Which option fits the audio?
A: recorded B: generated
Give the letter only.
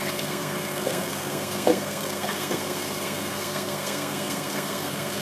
B